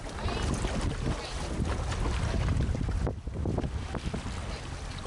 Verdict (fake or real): real